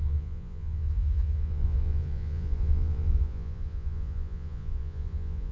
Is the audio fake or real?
fake